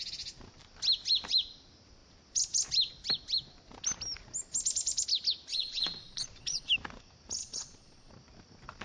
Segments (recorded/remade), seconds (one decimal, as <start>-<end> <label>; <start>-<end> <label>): 0.0-5.5 recorded; 5.5-6.7 remade; 6.7-7.4 recorded; 7.4-8.1 remade; 8.1-8.8 recorded